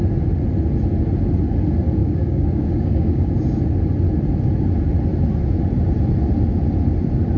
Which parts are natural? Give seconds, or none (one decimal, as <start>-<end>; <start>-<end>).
0.0-2.0; 3.3-7.4